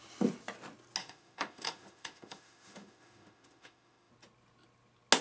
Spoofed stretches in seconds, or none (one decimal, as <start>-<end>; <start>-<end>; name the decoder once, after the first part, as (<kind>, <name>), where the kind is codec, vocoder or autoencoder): 1.0-4.1 (autoencoder, DAC-VAE)